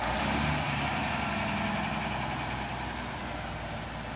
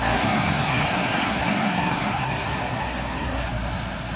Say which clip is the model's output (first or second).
second